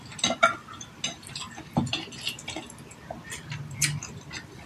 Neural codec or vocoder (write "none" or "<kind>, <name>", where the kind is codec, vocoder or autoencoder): none